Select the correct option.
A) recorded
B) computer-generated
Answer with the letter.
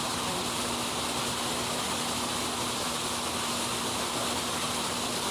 A